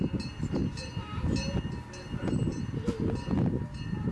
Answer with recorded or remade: recorded